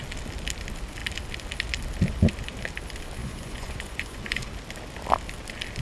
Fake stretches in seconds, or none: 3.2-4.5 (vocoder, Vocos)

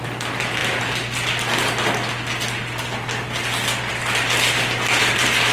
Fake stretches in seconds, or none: none

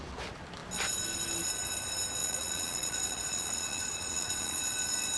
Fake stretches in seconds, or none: 2.2-4.6 (vocoder, Vocos)

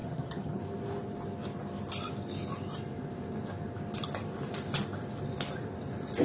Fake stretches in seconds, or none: 0.0-0.6 (vocoder, HiFi-GAN)

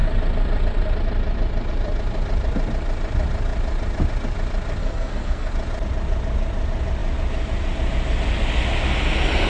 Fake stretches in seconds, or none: 4.8-5.5 (codec, SNAC)